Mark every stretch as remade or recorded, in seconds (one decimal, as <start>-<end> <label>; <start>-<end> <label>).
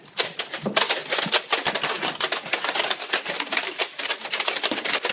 0.0-1.0 recorded; 1.0-4.1 remade; 4.1-5.1 recorded